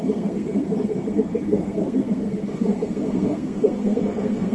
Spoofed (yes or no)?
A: yes